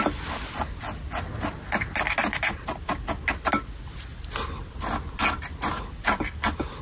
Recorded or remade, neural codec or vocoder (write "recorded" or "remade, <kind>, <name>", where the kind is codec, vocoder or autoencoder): recorded